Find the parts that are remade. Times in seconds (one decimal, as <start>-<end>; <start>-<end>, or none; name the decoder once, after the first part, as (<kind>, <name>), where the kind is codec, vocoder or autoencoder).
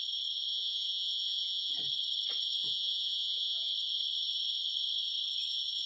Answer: 0.5-1.7 (vocoder, Vocos); 2.6-3.7